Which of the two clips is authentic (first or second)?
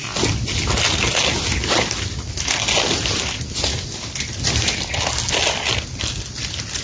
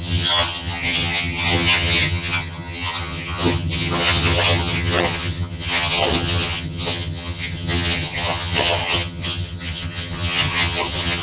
first